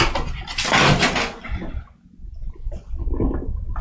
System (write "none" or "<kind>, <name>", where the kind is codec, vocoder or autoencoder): none